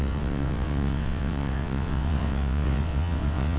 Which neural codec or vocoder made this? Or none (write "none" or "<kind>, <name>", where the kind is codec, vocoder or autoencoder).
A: vocoder, WaveNeXt